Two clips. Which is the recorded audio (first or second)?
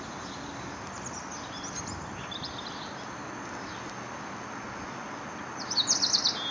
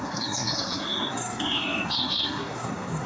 first